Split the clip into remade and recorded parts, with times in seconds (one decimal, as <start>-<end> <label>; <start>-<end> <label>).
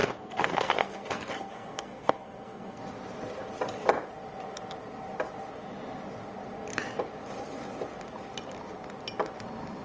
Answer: 0.0-2.8 remade; 2.8-9.8 recorded